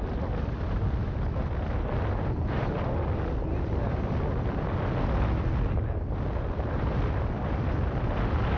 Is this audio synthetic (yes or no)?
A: no